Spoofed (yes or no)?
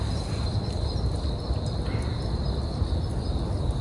no